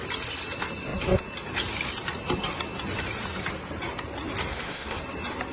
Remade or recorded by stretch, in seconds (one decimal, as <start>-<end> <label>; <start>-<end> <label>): 0.0-4.5 recorded; 4.5-5.0 remade; 5.0-5.5 recorded